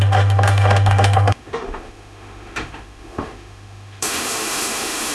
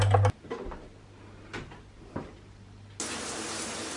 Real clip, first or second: second